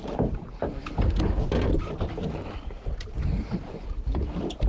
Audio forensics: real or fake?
real